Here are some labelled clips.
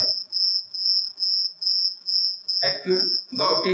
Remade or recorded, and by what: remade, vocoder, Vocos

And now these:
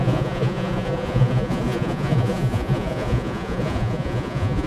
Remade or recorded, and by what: remade, vocoder, Vocos